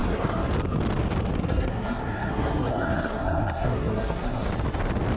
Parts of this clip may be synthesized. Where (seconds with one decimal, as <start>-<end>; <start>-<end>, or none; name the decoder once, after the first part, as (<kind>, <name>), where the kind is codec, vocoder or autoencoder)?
0.0-0.5 (codec, SNAC); 1.4-4.5